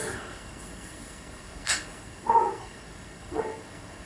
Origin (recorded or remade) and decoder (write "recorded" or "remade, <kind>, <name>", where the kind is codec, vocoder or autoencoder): remade, codec, SNAC